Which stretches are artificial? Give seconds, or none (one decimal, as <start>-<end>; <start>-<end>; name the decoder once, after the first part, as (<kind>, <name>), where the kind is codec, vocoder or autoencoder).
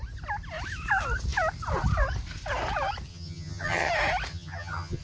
3.1-3.9 (vocoder, HiFi-GAN); 4.3-5.0